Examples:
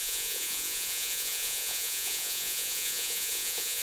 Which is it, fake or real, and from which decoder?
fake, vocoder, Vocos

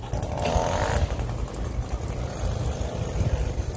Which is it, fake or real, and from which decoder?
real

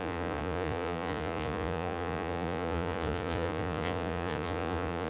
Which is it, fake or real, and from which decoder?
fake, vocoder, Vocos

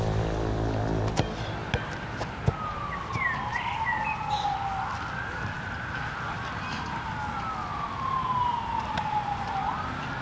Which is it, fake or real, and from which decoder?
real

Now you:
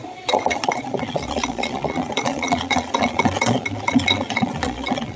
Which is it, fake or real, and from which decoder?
fake, vocoder, Vocos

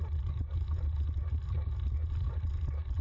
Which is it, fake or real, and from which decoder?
real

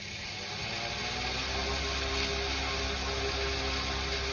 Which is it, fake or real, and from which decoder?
real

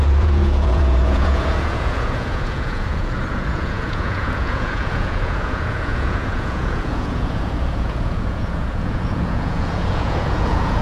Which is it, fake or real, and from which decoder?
fake, vocoder, Vocos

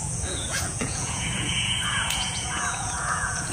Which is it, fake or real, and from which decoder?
fake, vocoder, Vocos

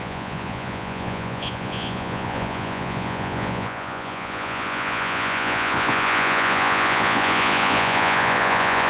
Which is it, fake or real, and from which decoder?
fake, vocoder, Vocos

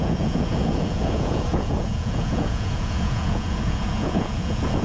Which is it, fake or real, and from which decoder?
fake, vocoder, Vocos